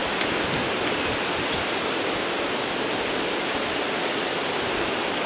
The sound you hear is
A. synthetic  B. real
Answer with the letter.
B